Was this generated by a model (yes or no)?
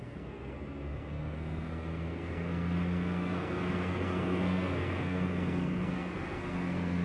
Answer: yes